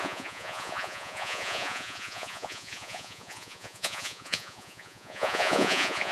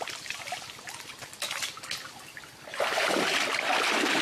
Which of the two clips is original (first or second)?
second